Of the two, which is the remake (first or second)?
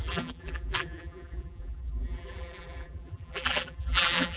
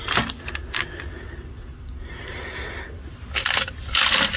first